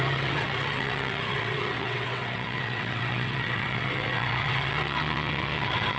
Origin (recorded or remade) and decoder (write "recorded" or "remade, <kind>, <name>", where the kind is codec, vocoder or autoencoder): remade, vocoder, WaveNeXt